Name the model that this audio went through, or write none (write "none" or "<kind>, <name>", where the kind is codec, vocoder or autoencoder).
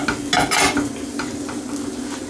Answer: none